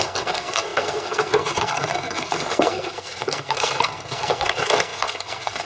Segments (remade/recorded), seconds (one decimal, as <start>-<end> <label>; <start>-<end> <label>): 0.0-5.7 remade